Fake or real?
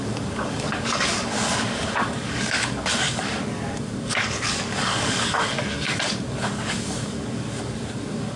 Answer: fake